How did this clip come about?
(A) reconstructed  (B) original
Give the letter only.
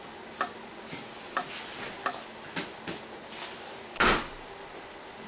B